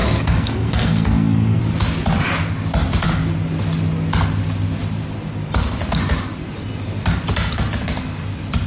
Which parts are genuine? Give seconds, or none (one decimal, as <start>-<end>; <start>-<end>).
1.6-8.7